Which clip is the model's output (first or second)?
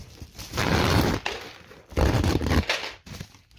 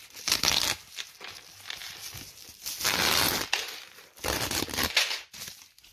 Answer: first